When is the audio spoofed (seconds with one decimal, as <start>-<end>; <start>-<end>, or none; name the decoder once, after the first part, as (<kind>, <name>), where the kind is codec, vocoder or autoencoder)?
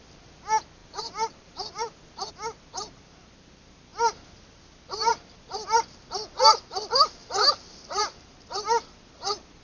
0.8-2.3 (vocoder, BigVGAN v2)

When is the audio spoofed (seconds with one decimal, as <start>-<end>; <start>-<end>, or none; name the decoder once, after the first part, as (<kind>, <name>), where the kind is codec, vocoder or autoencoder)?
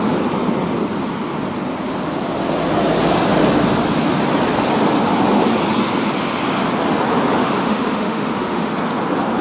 7.4-8.7 (autoencoder, DAC-VAE)